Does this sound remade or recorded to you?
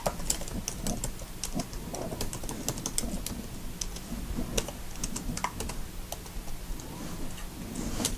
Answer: recorded